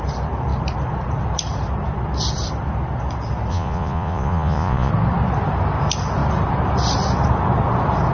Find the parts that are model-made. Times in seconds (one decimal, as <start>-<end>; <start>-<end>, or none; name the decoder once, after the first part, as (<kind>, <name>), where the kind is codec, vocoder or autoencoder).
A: 3.5-4.9 (vocoder, Vocos)

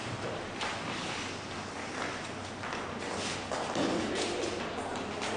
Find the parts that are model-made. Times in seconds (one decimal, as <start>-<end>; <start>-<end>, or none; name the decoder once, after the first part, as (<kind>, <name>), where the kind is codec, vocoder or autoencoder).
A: none

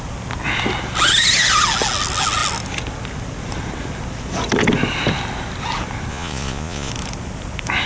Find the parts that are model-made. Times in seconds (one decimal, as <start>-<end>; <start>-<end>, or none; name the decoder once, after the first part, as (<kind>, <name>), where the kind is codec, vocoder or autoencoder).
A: 6.1-6.9 (vocoder, Vocos)

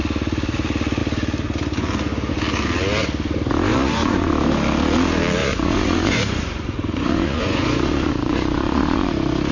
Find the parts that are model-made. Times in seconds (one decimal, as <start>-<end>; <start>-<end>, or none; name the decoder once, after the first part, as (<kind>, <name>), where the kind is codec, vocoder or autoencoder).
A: 3.7-4.3 (vocoder, Vocos); 5.4-9.1

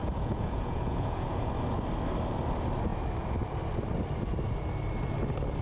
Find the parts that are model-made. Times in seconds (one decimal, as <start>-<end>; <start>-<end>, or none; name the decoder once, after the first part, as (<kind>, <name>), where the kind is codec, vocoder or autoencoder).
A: 0.0-1.5 (vocoder, Vocos)

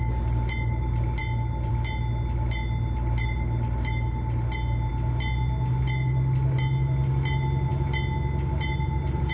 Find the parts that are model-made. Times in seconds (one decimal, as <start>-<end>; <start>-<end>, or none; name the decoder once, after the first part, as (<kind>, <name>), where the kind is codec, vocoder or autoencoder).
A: none

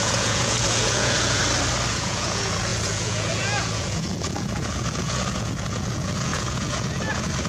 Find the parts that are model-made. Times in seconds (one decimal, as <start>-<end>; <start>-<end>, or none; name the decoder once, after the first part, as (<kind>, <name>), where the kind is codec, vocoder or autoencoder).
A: 0.0-1.4 (vocoder, Vocos); 1.9-7.5